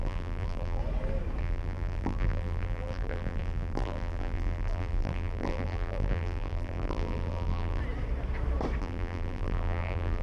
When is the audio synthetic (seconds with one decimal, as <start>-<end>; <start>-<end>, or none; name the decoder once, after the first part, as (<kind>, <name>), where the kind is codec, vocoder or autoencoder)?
0.0-0.8 (vocoder, BigVGAN v2); 1.4-7.8; 8.8-10.2